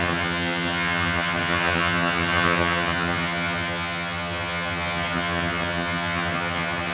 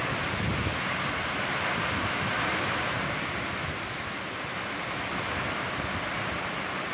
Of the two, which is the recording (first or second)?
second